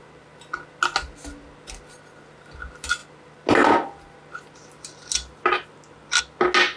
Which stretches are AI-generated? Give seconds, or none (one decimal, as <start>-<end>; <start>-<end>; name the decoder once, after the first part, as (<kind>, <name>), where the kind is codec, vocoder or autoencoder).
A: none